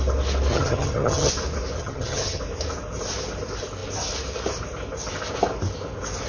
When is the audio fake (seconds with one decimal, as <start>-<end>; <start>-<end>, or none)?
0.5-1.3; 1.8-2.4